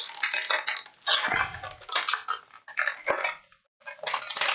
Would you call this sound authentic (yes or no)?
yes